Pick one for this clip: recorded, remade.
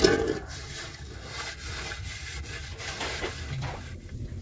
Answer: recorded